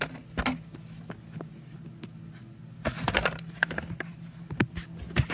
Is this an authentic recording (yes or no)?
yes